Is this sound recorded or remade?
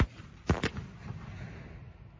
recorded